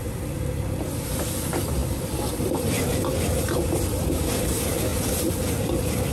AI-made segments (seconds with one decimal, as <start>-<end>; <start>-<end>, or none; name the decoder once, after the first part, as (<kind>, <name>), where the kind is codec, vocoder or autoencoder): none